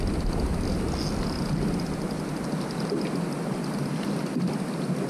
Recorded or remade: recorded